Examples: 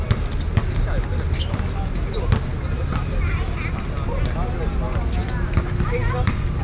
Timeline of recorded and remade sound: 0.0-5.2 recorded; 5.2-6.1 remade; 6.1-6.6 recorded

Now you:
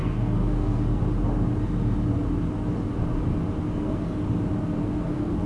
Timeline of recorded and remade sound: 0.0-1.0 remade; 1.0-3.6 recorded; 3.6-4.1 remade; 4.1-4.8 recorded; 4.8-5.5 remade